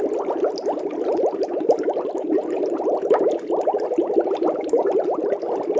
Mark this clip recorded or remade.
recorded